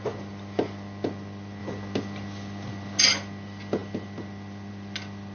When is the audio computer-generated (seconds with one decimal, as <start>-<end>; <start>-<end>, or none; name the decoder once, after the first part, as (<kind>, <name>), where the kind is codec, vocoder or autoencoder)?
none